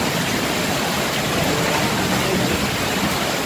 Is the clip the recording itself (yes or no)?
yes